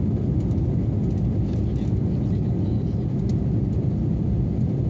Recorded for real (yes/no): yes